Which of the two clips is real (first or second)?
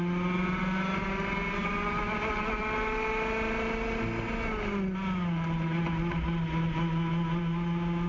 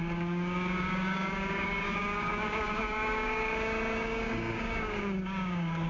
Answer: first